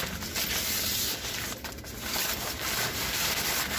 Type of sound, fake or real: real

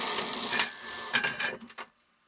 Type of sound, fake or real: real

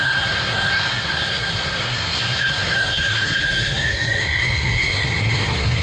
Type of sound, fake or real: fake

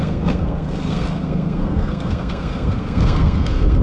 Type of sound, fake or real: fake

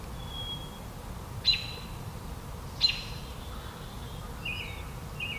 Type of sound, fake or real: real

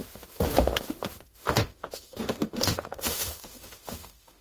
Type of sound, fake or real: fake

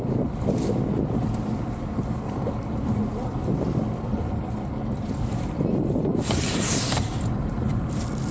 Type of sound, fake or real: real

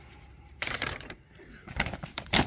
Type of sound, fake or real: fake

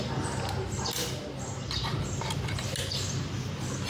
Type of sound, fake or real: real